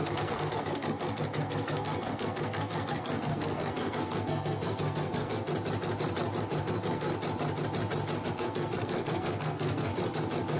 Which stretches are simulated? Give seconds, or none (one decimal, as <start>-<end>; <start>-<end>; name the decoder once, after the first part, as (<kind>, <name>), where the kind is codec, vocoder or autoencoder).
0.0-5.5 (codec, SNAC); 6.6-7.1; 8.3-9.9